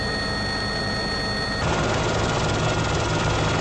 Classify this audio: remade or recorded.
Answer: recorded